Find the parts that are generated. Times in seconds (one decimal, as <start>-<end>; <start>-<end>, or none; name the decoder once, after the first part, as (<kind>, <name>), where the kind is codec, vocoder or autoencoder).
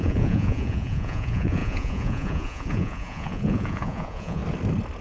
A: 0.0-4.4 (vocoder, Vocos)